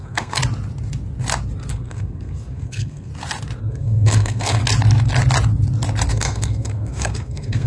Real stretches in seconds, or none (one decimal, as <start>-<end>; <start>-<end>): 0.4-1.7; 3.1-3.6; 4.6-6.1